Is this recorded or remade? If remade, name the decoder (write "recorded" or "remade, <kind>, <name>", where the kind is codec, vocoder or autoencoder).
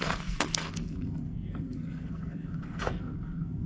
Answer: remade, codec, SNAC